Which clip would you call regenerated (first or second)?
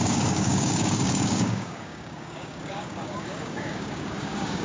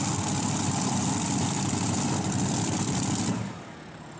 first